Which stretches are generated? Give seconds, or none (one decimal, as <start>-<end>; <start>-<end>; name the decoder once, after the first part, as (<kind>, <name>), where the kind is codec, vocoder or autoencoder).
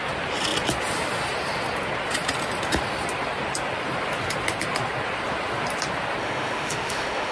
6.2-7.3 (autoencoder, DAC-VAE)